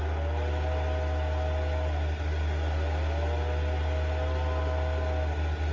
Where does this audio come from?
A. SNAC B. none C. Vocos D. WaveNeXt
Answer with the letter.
B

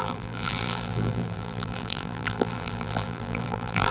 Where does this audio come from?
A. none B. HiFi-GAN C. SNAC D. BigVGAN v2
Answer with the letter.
D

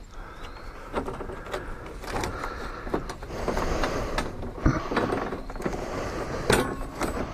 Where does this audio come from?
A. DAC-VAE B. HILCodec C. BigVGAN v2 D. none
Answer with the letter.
D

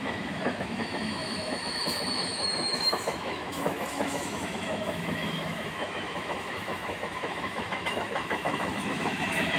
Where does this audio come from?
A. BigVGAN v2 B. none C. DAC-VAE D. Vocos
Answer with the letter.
C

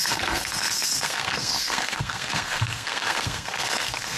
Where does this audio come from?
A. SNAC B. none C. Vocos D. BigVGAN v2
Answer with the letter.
A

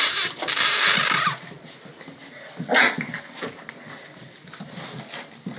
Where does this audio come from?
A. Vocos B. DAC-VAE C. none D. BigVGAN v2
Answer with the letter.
C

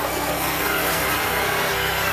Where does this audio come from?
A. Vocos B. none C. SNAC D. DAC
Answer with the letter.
C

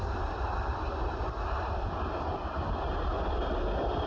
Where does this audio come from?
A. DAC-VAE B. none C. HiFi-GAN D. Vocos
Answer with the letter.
B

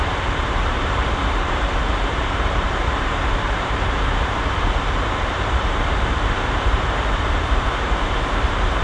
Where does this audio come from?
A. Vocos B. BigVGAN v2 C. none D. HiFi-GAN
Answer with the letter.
B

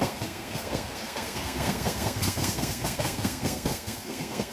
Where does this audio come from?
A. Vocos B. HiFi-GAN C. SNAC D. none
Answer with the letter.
C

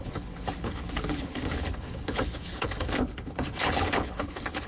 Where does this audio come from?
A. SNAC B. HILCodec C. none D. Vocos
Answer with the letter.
B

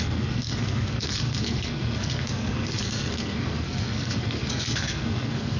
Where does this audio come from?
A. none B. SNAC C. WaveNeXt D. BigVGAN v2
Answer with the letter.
B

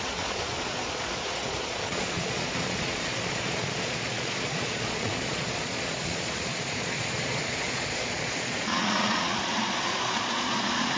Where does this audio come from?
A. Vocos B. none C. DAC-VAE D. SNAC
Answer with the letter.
A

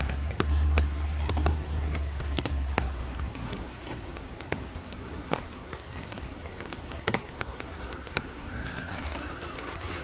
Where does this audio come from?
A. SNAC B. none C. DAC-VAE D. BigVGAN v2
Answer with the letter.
A